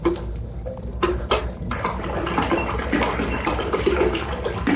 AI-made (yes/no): no